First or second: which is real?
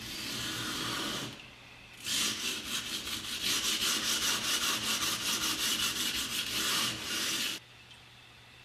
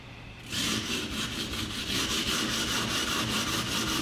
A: first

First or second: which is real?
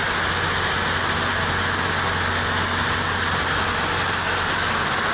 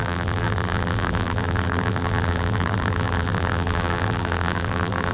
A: first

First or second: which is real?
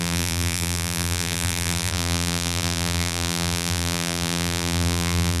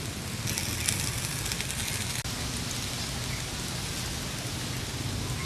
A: second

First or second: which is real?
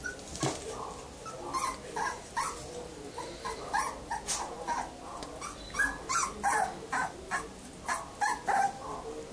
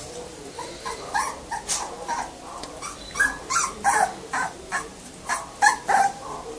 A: first